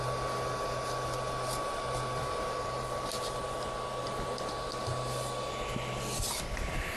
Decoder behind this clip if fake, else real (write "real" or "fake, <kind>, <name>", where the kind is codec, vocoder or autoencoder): real